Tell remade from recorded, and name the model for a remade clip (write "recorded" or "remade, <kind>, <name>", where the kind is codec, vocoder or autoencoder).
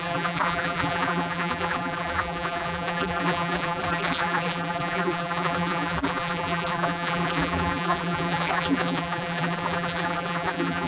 remade, vocoder, BigVGAN v2